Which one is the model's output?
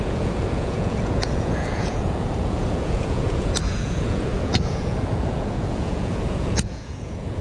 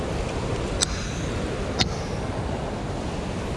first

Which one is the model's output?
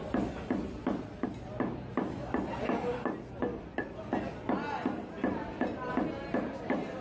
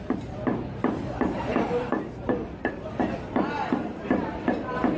second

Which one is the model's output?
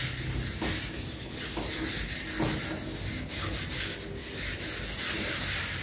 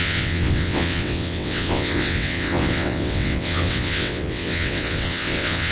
second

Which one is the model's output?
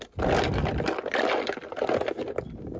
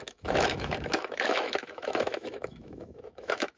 second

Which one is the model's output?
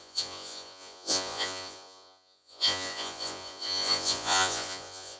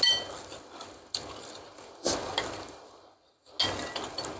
first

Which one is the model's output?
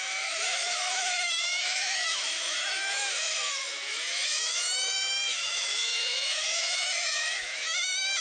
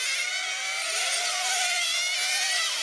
first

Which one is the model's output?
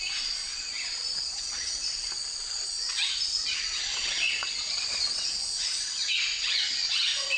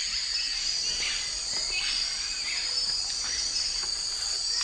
first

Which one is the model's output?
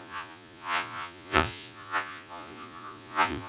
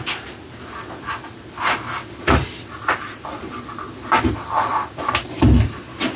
first